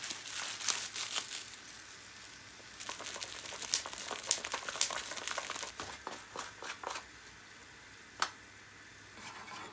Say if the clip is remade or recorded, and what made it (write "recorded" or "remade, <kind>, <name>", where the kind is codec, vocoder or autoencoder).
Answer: recorded